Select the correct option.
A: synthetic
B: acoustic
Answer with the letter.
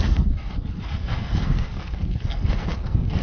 A